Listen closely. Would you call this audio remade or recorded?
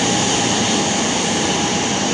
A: remade